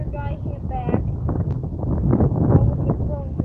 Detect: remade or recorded recorded